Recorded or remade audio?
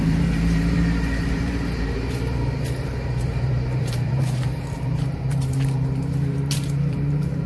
remade